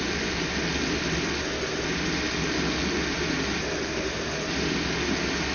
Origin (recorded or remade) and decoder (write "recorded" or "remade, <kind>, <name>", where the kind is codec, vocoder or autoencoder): recorded